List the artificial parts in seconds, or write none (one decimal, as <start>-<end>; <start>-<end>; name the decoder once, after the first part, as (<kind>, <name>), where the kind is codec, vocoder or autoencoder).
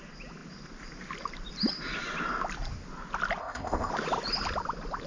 3.4-3.9 (codec, ZipCodec)